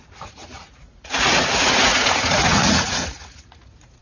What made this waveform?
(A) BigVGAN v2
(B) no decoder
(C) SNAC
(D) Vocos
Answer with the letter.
D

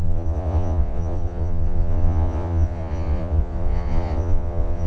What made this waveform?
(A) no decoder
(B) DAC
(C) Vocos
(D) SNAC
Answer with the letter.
C